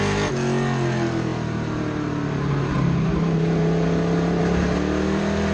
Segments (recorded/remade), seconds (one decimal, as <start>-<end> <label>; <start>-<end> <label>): 0.0-5.5 recorded